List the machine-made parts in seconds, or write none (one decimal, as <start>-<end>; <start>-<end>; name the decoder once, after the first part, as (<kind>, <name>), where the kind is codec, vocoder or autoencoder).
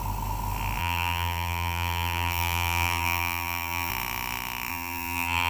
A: 0.8-3.9 (vocoder, BigVGAN v2); 4.7-5.5